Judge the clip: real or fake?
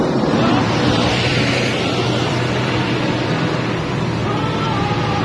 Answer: fake